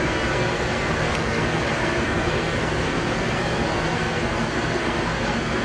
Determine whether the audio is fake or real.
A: fake